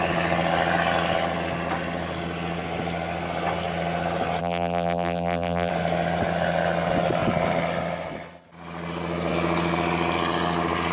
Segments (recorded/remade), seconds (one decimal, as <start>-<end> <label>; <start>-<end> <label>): 0.0-4.4 recorded; 4.4-5.7 remade; 5.7-10.9 recorded